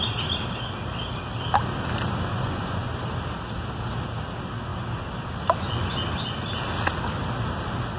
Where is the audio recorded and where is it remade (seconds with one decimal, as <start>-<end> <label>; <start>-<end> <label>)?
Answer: 0.0-2.3 recorded; 2.3-2.9 remade; 2.9-8.0 recorded